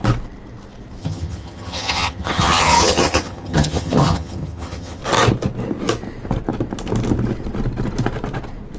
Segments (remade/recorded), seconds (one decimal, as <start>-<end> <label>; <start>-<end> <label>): 0.0-1.0 recorded; 1.0-5.0 remade; 5.0-8.8 recorded